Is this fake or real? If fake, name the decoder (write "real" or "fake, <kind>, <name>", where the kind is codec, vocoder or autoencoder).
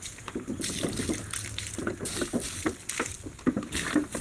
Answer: real